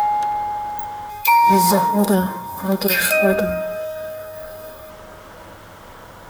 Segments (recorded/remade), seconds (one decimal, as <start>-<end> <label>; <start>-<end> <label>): 0.0-1.1 recorded; 1.1-4.9 remade; 4.9-6.3 recorded